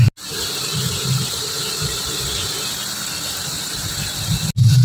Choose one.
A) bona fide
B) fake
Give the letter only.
A